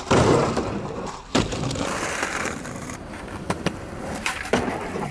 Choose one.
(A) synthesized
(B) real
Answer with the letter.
A